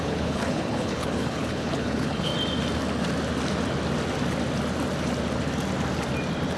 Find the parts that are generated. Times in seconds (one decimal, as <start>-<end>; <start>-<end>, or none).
0.0-2.3